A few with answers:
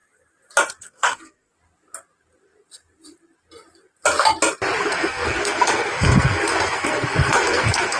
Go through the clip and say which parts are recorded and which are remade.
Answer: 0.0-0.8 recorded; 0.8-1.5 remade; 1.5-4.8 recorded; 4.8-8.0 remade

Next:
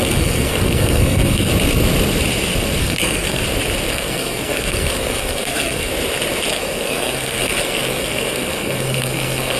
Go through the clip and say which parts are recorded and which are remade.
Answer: 0.0-1.5 remade; 1.5-2.8 recorded; 2.8-3.4 remade; 3.4-3.9 recorded; 3.9-5.9 remade; 5.9-6.5 recorded; 6.5-9.6 remade

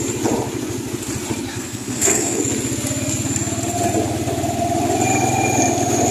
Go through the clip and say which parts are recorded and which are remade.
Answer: 0.0-1.5 recorded; 1.5-2.4 remade; 2.4-6.1 recorded

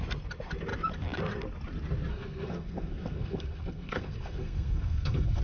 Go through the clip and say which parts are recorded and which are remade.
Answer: 0.0-2.1 recorded; 2.1-5.4 remade